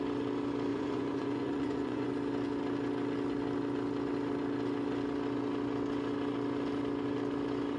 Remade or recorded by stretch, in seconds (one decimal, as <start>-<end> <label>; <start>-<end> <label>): 0.0-0.7 recorded; 0.7-2.1 remade; 2.1-7.8 recorded